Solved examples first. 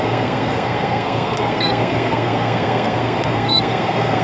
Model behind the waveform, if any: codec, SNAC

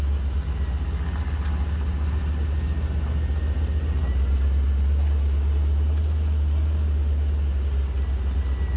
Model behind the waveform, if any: none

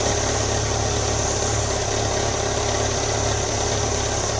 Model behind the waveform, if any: none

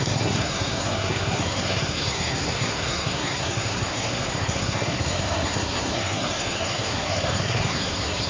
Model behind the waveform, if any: codec, SNAC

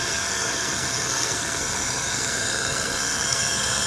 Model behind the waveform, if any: codec, SNAC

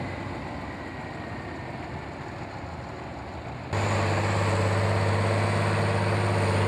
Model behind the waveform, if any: none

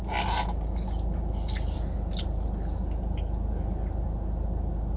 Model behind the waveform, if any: none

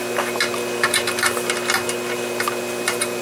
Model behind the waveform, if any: none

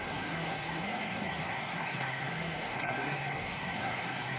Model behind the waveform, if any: codec, SNAC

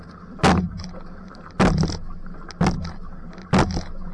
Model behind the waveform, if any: none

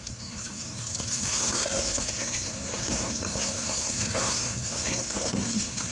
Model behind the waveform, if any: codec, SNAC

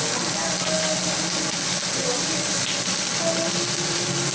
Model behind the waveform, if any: none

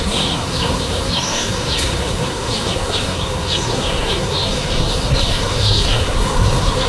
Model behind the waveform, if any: codec, SNAC